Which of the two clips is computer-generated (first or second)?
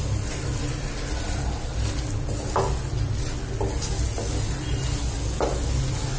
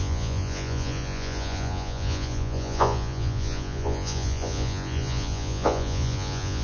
second